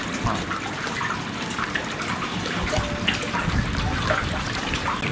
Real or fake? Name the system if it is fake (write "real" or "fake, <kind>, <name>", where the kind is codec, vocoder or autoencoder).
real